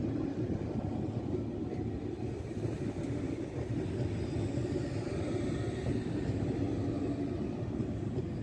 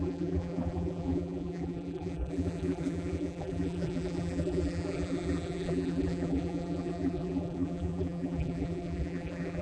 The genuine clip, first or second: first